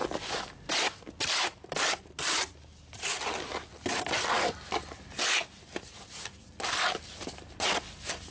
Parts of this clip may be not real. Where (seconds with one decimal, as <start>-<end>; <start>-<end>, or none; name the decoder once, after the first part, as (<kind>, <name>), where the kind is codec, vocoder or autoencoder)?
none